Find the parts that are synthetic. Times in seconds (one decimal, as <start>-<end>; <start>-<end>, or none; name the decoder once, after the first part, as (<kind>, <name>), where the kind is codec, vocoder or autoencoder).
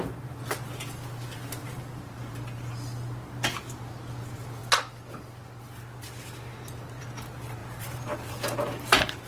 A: 1.6-2.7 (vocoder, BigVGAN v2); 7.6-9.3